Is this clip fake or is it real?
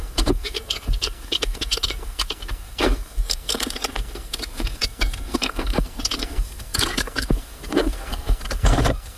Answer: fake